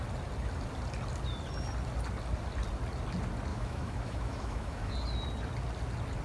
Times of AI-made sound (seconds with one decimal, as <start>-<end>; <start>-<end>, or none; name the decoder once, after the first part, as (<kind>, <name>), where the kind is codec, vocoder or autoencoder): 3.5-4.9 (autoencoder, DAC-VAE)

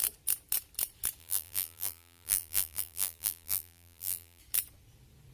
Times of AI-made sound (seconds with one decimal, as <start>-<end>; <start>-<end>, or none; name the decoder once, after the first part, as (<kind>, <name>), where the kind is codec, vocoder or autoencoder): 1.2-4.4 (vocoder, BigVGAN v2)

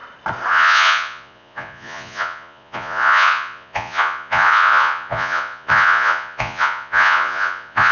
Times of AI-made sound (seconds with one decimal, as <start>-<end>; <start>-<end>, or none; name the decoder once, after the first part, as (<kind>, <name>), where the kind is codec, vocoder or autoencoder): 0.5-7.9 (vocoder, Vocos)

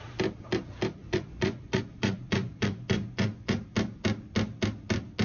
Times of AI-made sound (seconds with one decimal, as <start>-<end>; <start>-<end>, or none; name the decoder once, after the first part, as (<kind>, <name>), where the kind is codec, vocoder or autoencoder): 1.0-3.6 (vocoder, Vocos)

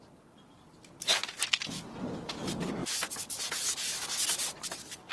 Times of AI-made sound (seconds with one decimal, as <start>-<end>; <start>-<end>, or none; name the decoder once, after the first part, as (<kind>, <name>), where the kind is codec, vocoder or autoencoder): none